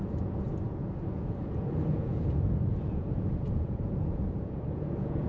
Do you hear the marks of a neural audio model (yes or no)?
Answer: yes